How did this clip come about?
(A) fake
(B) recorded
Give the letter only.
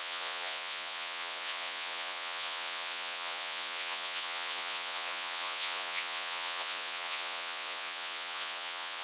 A